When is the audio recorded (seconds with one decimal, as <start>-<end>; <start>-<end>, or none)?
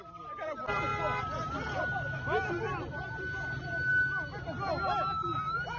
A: 0.0-5.8